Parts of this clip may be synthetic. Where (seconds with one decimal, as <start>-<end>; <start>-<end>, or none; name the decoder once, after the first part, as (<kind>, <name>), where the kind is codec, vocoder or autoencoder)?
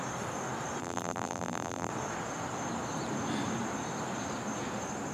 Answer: 0.8-1.9 (vocoder, BigVGAN v2)